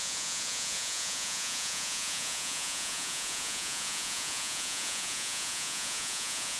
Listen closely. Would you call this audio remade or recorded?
remade